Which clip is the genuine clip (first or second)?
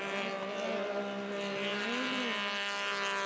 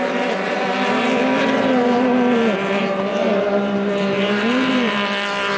first